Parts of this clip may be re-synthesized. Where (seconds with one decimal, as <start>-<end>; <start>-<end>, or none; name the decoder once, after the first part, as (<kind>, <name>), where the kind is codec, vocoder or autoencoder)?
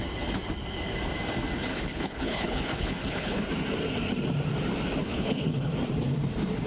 1.7-3.4 (codec, HILCodec); 5.0-5.7